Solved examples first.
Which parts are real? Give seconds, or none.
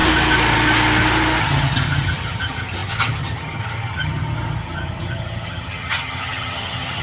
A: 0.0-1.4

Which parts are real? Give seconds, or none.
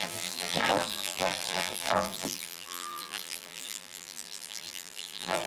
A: none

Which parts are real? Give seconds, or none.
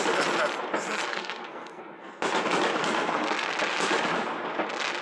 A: 0.0-1.1; 2.2-2.8; 3.5-5.0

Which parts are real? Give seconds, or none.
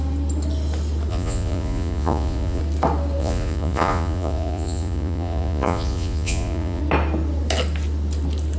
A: 0.0-1.1; 2.6-3.2; 6.8-8.6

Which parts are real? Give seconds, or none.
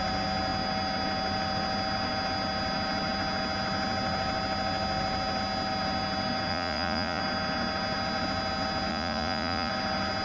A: 0.0-6.5; 7.2-8.9; 9.7-10.2